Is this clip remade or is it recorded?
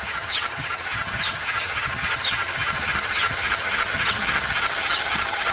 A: remade